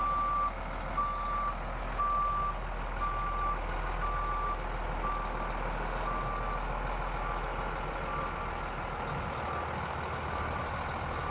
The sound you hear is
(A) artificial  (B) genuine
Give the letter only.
B